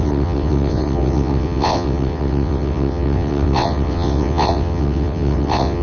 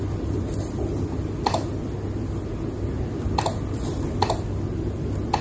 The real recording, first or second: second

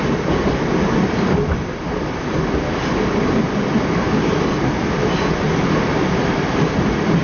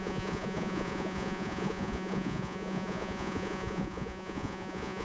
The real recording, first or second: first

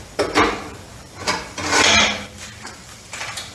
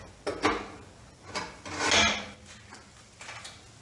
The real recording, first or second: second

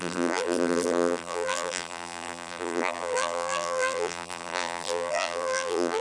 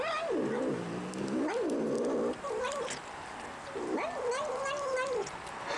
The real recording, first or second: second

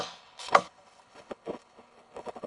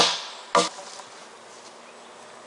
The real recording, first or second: second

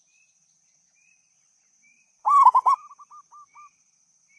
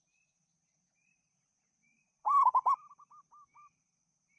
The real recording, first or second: first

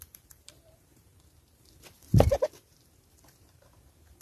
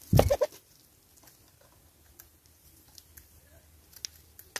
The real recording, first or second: second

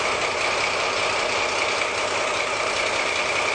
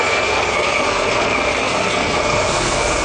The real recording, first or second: first